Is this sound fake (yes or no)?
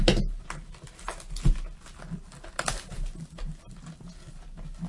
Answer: no